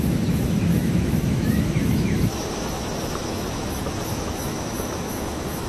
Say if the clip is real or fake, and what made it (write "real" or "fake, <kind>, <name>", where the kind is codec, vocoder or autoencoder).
fake, autoencoder, DAC-VAE